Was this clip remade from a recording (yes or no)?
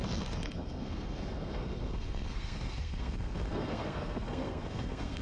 yes